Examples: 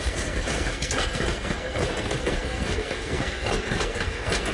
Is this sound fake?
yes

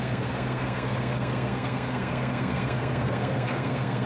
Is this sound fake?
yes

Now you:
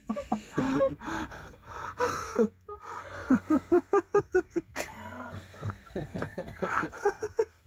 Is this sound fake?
yes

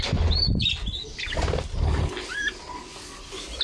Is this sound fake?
no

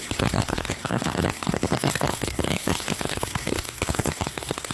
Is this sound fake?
yes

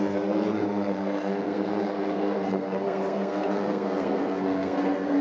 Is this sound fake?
yes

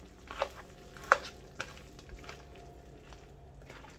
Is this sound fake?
no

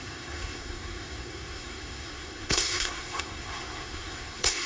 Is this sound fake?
yes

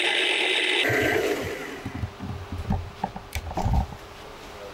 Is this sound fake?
no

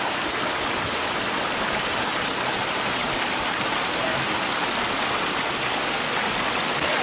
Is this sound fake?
no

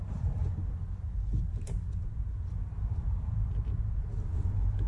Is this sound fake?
no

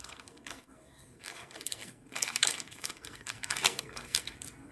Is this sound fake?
yes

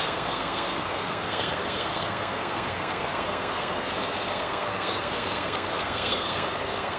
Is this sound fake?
yes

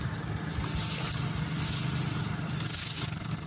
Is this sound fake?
no